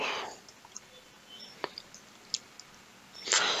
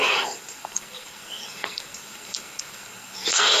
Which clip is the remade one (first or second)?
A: second